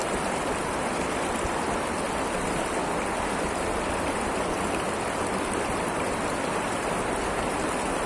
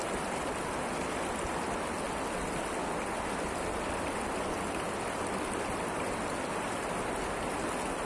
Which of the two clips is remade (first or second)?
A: first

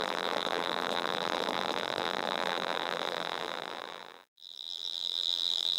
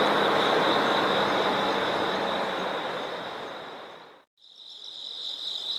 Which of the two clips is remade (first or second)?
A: first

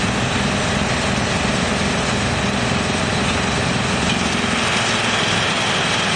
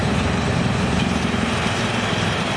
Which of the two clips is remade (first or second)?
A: second